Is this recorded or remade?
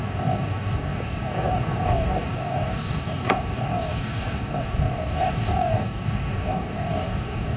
remade